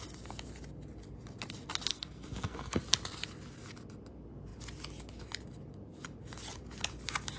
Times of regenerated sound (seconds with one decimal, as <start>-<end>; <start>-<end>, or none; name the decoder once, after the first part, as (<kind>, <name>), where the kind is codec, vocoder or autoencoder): 1.9-2.8 (codec, SNAC)